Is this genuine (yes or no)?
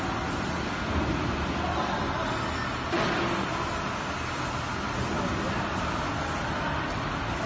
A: yes